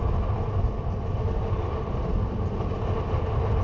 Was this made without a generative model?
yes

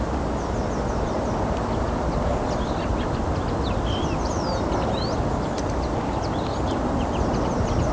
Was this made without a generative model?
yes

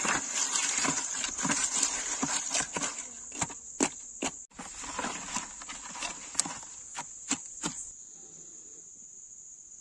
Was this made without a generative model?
yes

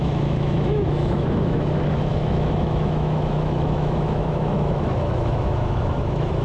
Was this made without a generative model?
no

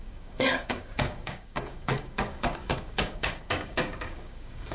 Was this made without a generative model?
no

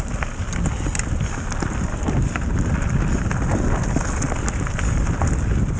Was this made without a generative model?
yes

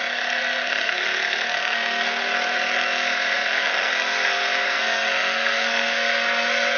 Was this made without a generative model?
no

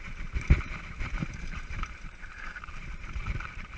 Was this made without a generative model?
no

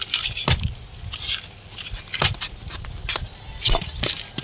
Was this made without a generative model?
yes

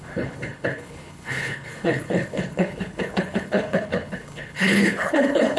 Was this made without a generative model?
no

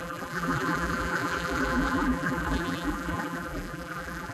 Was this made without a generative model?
no